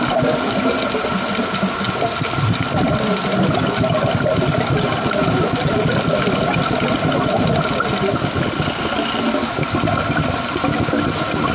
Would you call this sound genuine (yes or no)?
yes